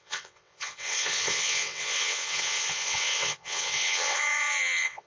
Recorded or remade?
remade